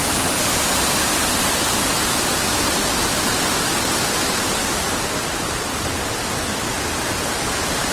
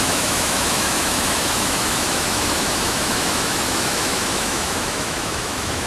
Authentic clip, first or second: first